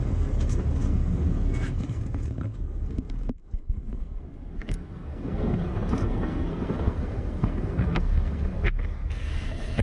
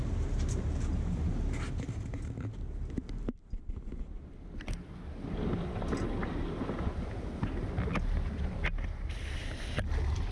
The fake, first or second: first